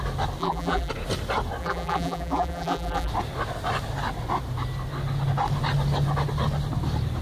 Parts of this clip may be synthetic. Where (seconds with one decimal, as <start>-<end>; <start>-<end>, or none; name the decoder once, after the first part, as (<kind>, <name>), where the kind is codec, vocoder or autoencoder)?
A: 0.4-0.9 (vocoder, BigVGAN v2); 1.6-3.1